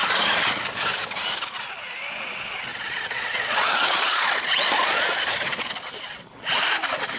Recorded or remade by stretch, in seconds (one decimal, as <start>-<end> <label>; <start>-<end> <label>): 0.0-2.7 recorded; 2.7-5.7 remade; 5.7-7.2 recorded